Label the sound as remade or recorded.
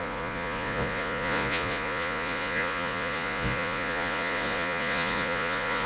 remade